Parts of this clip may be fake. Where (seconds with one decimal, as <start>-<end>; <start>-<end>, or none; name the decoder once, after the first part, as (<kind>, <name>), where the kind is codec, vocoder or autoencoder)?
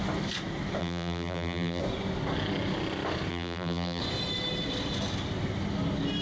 0.8-1.8 (vocoder, BigVGAN v2); 3.3-4.0